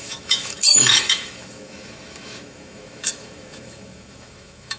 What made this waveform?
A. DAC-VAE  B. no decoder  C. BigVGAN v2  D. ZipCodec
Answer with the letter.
A